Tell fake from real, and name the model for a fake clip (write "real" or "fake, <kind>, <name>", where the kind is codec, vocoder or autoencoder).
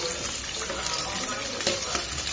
real